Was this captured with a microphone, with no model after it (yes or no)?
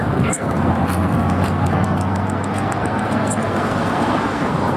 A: no